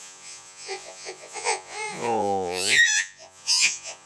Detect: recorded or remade remade